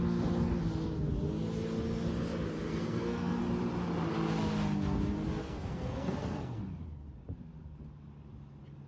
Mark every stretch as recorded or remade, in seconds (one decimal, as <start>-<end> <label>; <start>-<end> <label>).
0.0-2.7 recorded; 2.7-3.4 remade; 3.4-5.4 recorded; 5.4-6.6 remade; 6.6-8.9 recorded